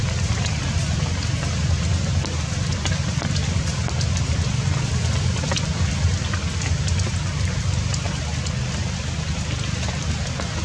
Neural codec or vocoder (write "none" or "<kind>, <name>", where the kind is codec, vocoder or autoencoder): none